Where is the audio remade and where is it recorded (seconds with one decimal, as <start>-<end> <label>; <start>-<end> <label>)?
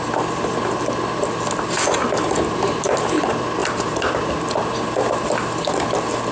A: 0.0-2.0 recorded; 2.0-3.2 remade; 3.2-3.6 recorded; 3.6-4.3 remade; 4.3-6.3 recorded